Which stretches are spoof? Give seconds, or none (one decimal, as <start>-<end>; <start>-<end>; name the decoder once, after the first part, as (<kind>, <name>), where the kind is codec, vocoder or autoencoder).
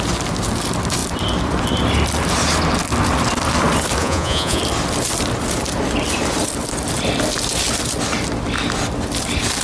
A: 4.0-4.6 (vocoder, Vocos)